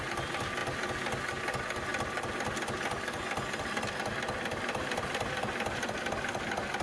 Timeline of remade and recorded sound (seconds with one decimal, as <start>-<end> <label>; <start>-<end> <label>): 0.0-6.8 recorded